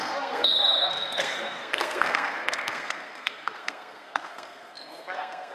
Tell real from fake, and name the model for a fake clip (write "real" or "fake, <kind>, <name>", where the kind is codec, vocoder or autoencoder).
fake, codec, SNAC